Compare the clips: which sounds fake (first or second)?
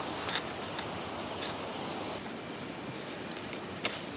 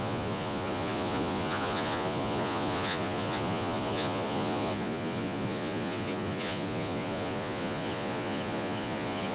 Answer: second